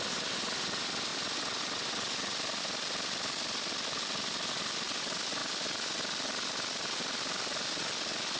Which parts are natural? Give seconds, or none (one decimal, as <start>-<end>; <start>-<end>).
0.0-8.4